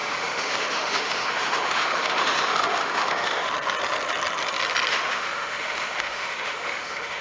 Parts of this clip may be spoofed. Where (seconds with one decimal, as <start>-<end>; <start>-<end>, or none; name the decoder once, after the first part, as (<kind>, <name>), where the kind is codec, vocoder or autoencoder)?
0.0-3.5 (autoencoder, DAC-VAE); 4.9-7.2